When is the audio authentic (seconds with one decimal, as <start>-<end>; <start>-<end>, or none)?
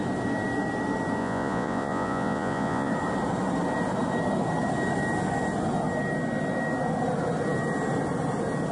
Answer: 0.0-1.2; 2.9-8.7